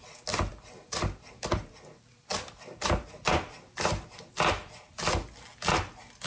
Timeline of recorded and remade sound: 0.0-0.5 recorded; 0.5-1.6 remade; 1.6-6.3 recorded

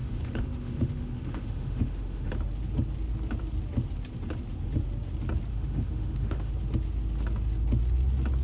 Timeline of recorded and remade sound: 0.0-2.3 remade; 2.3-5.5 recorded; 5.5-6.5 remade; 6.5-8.4 recorded

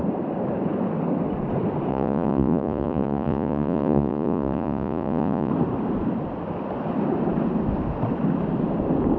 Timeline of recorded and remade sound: 0.0-1.9 recorded; 1.9-5.5 remade; 5.5-9.2 recorded

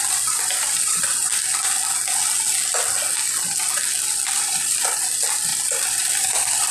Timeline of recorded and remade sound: 0.0-1.3 remade; 1.3-4.1 recorded; 4.1-5.5 remade; 5.5-6.2 recorded; 6.2-6.7 remade

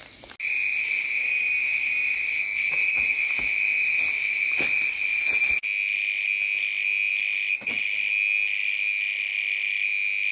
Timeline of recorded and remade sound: 0.0-1.2 recorded; 1.2-2.3 remade; 2.3-2.8 recorded; 2.8-3.3 remade; 3.3-10.3 recorded